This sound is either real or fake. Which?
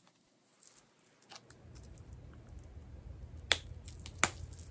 real